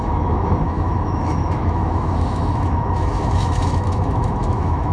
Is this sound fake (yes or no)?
yes